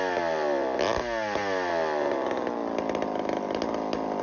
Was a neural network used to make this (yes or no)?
no